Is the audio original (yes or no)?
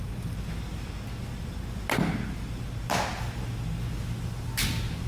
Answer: yes